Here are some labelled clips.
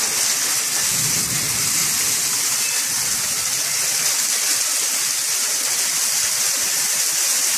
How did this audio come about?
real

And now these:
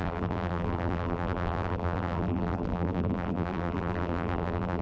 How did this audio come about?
fake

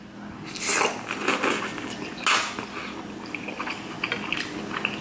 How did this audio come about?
real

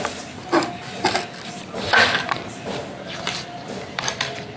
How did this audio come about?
fake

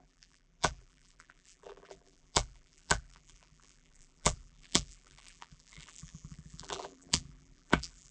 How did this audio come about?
fake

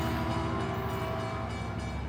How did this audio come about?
real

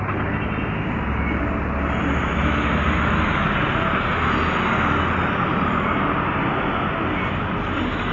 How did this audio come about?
real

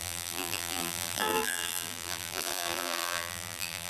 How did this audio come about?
fake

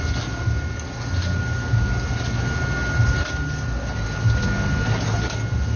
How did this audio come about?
real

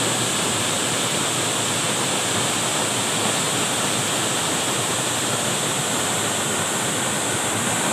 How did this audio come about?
real